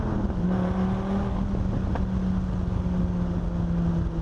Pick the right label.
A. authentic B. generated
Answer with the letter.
A